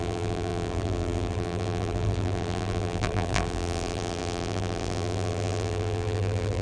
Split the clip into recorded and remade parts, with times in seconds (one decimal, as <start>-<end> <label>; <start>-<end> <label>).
0.0-6.6 remade